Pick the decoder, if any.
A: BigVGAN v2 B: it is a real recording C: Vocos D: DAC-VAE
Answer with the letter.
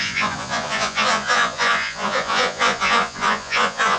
C